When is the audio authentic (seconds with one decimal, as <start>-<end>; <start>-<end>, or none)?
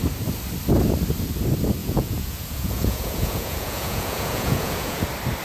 0.0-1.8; 5.0-5.4